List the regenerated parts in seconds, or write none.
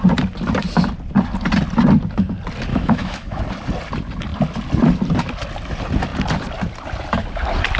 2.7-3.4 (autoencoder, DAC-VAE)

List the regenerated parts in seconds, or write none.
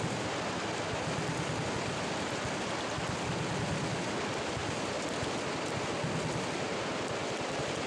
none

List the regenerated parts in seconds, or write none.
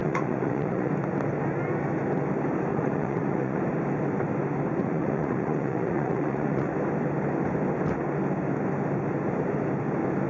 0.0-0.9 (vocoder, Vocos); 2.7-3.6; 4.8-6.7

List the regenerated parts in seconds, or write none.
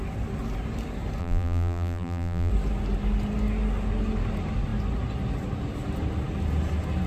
1.2-2.5 (vocoder, BigVGAN v2)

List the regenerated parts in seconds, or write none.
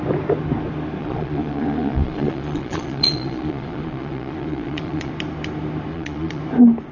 1.0-5.1 (vocoder, Vocos); 5.9-6.4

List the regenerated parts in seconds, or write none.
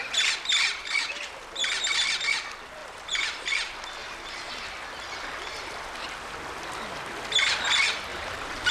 2.8-3.5 (vocoder, BigVGAN v2); 8.1-8.7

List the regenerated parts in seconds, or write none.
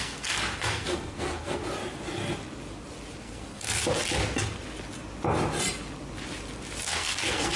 0.0-1.6 (codec, SNAC); 3.2-3.8; 6.9-7.6